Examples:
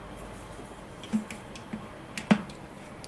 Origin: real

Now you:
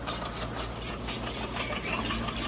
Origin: real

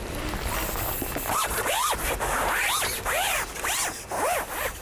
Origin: real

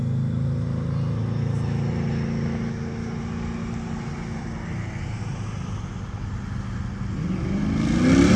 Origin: real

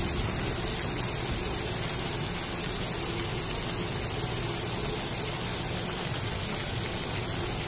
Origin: real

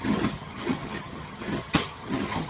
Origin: fake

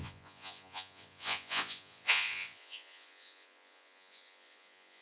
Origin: fake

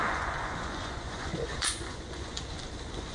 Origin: fake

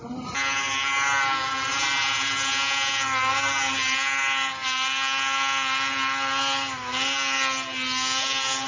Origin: real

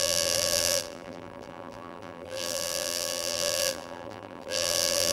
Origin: fake